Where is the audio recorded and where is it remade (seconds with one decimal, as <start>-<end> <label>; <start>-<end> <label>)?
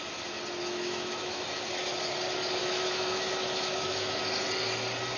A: 0.0-0.6 recorded; 0.6-1.4 remade; 1.4-2.6 recorded; 2.6-4.2 remade; 4.2-5.2 recorded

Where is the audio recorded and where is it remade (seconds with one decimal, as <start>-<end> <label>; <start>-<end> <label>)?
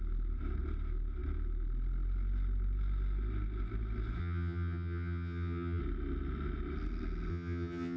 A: 0.0-4.2 recorded; 4.2-5.8 remade; 5.8-7.3 recorded; 7.3-8.0 remade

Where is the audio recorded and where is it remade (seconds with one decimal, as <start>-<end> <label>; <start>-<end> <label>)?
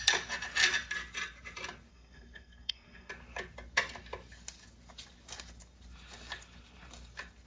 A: 0.0-1.9 recorded; 1.9-3.1 remade; 3.1-7.5 recorded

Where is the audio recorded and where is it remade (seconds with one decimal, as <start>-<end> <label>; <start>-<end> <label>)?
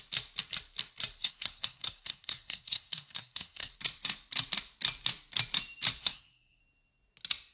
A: 0.0-1.2 recorded; 1.2-3.7 remade; 3.7-6.0 recorded; 6.0-6.6 remade; 6.6-7.5 recorded